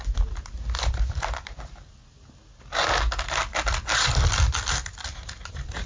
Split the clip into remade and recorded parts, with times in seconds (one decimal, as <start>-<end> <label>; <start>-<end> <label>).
0.0-0.8 recorded; 0.8-2.0 remade; 2.0-5.5 recorded; 5.5-5.9 remade